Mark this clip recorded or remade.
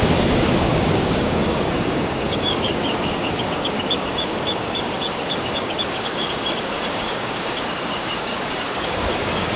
remade